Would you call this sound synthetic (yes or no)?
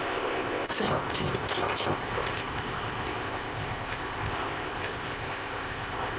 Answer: yes